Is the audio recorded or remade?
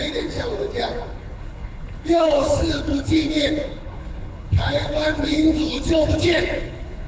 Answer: remade